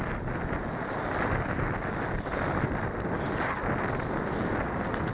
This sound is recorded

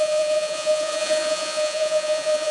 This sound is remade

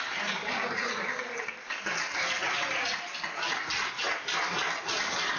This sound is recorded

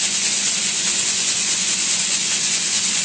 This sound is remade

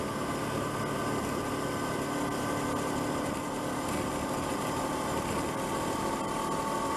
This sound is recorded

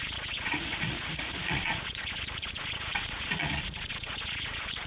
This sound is remade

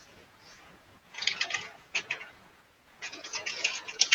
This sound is remade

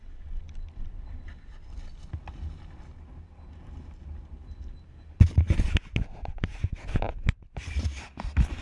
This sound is recorded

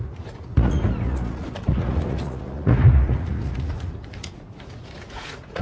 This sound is remade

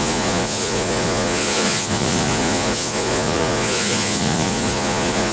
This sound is remade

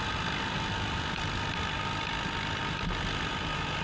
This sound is recorded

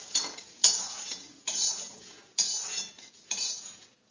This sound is remade